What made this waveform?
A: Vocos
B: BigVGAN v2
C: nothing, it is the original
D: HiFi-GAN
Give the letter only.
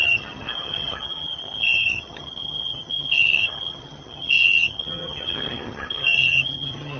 D